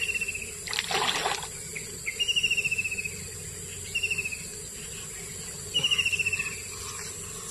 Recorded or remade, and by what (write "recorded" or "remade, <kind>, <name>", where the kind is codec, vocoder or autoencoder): recorded